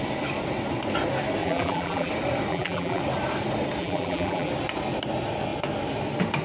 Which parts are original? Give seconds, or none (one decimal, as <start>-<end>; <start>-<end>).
0.0-1.4; 2.1-2.5; 3.0-3.8; 4.5-6.4